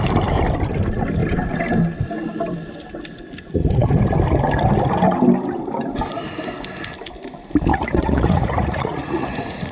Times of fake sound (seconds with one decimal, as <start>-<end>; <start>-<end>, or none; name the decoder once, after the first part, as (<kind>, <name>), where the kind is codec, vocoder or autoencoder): 7.7-9.7 (vocoder, Vocos)